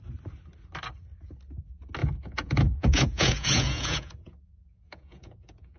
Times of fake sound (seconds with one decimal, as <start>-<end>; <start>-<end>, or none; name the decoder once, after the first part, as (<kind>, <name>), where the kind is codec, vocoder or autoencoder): 2.0-5.8 (vocoder, Vocos)